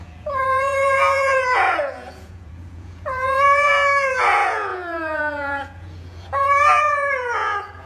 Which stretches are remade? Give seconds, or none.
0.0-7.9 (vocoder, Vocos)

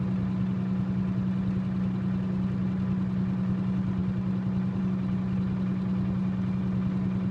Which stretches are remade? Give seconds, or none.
none

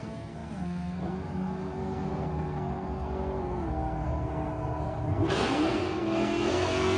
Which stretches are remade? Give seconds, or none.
0.0-7.0 (codec, SNAC)

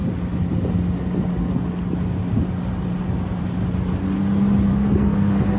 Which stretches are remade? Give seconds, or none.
4.7-5.6 (codec, SNAC)